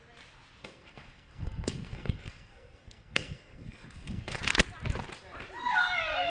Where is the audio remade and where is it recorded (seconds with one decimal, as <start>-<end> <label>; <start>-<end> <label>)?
0.0-0.6 recorded; 0.6-4.4 remade; 4.4-6.3 recorded